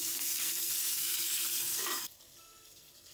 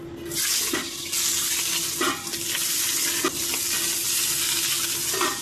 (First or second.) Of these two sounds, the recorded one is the second